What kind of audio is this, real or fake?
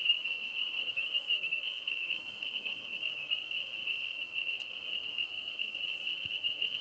fake